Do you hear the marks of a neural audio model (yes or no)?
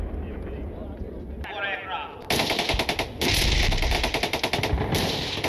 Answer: no